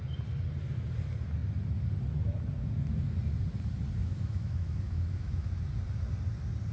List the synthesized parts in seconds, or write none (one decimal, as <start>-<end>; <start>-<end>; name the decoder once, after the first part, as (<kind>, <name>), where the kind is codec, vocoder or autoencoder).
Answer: 4.0-5.5 (autoencoder, DAC-VAE)